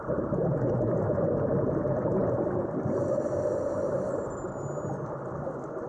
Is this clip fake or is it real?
real